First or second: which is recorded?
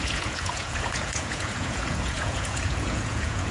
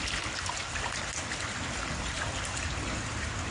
second